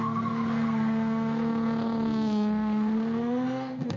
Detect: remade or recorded remade